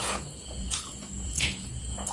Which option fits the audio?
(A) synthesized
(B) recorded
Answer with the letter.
A